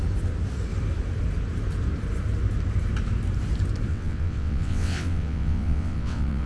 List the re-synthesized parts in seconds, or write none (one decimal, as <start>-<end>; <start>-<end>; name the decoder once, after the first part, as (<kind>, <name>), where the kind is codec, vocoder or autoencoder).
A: 3.9-6.5 (vocoder, WaveNeXt)